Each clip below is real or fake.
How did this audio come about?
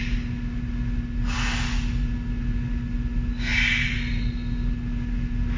real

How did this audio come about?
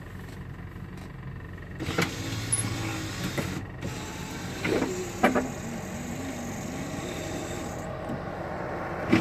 real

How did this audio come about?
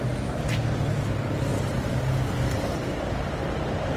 real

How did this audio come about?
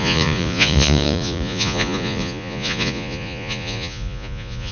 fake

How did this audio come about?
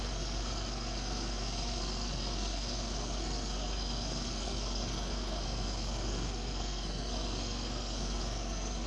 fake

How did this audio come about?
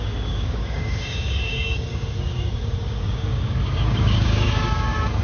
fake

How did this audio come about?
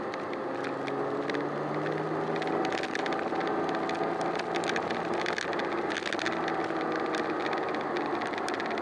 real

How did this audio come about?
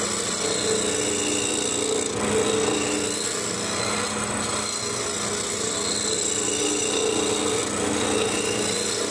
real